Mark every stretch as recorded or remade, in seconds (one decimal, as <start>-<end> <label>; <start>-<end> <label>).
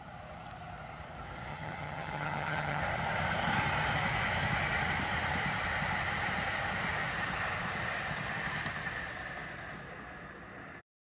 0.0-1.5 recorded; 1.5-2.8 remade; 2.8-11.2 recorded